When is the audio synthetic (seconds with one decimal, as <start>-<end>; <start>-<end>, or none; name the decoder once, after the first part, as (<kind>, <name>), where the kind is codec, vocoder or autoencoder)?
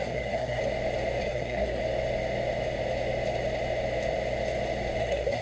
0.0-0.6 (codec, SNAC); 1.2-1.8; 5.0-5.4